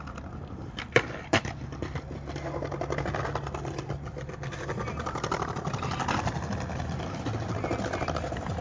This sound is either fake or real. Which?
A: real